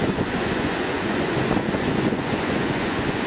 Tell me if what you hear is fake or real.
fake